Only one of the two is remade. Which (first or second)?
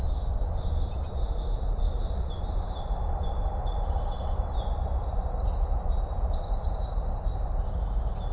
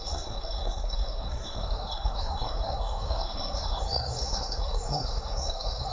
second